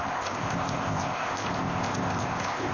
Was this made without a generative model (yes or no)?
no